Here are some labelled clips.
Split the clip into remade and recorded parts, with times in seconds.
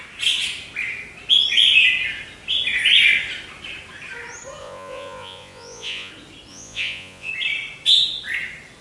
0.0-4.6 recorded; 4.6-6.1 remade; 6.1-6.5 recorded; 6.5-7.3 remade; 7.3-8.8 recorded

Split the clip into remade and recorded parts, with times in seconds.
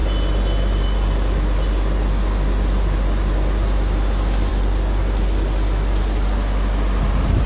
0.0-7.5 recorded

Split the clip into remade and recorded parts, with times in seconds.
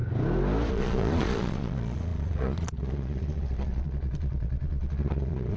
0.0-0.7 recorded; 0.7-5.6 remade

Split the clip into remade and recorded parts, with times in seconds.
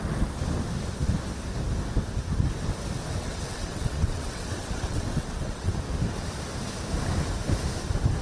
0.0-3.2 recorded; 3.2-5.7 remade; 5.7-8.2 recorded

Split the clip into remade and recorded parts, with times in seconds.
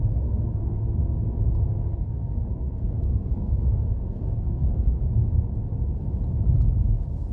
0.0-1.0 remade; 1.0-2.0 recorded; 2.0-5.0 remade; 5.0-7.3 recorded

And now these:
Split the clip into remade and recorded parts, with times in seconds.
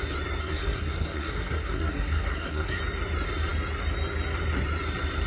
0.0-0.4 recorded; 0.4-2.8 remade; 2.8-5.3 recorded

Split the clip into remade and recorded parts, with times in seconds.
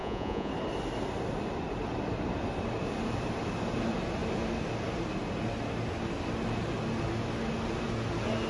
0.0-0.5 remade; 0.5-8.5 recorded